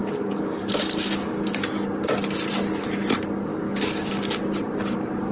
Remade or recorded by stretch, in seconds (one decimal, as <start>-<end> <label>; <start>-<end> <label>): 0.0-1.6 remade; 1.6-3.5 recorded; 3.5-4.4 remade; 4.4-5.3 recorded